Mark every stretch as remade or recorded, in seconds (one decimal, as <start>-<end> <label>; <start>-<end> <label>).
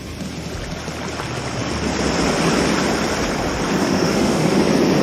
0.0-3.8 recorded; 3.8-4.6 remade; 4.6-5.0 recorded